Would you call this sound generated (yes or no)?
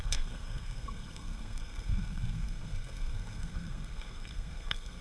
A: yes